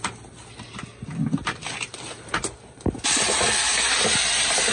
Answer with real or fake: real